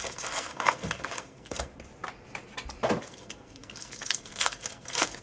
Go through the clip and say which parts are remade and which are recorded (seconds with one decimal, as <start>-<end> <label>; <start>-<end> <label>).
0.0-1.7 remade; 1.7-3.0 recorded; 3.0-5.2 remade